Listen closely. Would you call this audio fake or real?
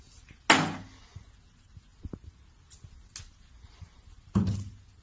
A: real